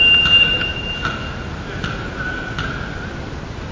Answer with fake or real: real